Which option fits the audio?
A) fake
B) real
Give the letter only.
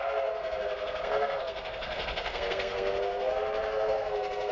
A